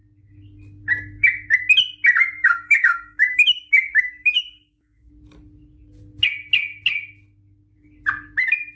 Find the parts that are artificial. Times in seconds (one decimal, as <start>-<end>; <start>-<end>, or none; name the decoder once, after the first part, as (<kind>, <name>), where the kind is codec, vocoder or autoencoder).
2.4-5.1 (autoencoder, DAC-VAE)